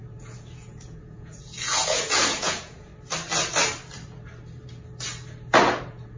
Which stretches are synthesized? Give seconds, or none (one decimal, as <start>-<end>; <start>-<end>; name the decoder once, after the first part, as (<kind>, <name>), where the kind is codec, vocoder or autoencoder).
0.0-2.9 (vocoder, Vocos); 5.8-6.2